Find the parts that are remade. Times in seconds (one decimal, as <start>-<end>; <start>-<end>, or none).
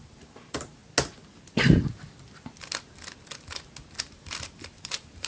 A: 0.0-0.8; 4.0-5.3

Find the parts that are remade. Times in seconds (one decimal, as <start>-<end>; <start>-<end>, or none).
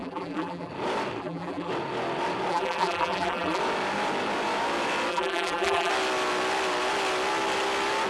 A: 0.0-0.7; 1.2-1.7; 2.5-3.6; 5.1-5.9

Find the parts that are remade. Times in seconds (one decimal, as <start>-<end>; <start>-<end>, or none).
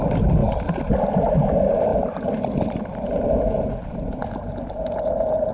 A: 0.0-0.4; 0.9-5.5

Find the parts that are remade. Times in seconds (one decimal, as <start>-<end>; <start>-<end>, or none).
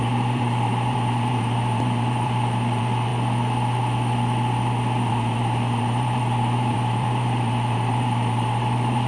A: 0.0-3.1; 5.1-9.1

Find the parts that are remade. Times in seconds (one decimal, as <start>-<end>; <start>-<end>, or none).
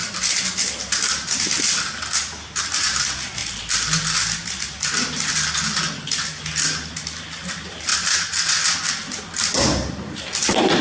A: none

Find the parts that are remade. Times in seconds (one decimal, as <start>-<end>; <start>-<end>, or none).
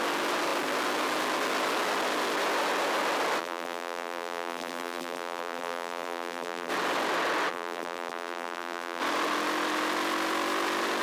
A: 3.4-6.7; 7.5-9.0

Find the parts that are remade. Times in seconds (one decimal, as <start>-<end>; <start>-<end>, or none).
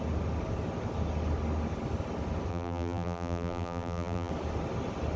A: 2.5-4.3